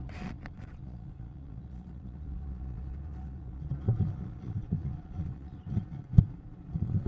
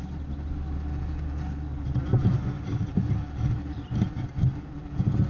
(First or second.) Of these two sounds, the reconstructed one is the first